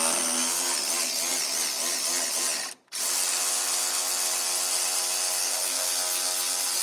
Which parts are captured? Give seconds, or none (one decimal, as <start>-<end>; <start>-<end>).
0.0-5.4; 5.9-6.8